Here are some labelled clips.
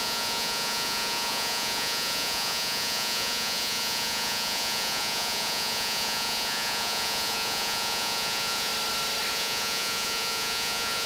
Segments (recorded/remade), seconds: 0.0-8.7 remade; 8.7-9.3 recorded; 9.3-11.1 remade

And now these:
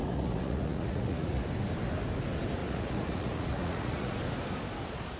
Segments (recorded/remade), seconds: 0.0-1.4 remade; 1.4-2.6 recorded; 2.6-4.2 remade; 4.2-5.2 recorded

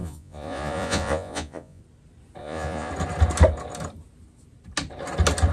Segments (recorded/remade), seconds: 0.0-1.8 remade; 1.8-2.4 recorded; 2.4-2.9 remade; 2.9-5.5 recorded

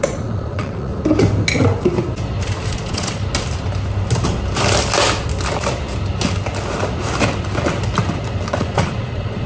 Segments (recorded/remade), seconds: 0.0-0.9 remade; 0.9-2.7 recorded; 2.7-3.2 remade; 3.2-8.5 recorded; 8.5-9.5 remade